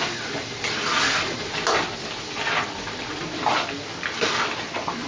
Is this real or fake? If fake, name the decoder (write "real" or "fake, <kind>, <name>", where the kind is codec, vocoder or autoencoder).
real